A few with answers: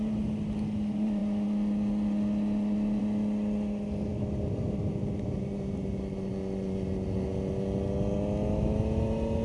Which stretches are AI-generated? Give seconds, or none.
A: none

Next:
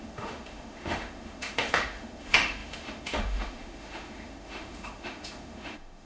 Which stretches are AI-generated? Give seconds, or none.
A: 0.0-6.1 (autoencoder, DAC-VAE)

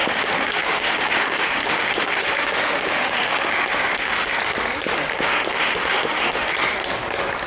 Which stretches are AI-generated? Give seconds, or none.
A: 0.0-4.4 (autoencoder, DAC-VAE); 5.1-6.5

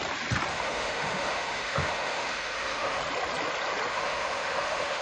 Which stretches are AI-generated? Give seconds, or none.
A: 0.5-3.0 (autoencoder, DAC-VAE); 3.9-5.0

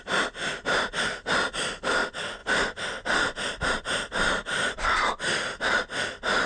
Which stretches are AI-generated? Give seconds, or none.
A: none